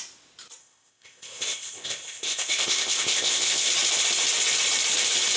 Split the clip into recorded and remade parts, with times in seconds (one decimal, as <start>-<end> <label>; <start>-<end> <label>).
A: 0.0-0.6 recorded; 0.6-3.7 remade; 3.7-5.4 recorded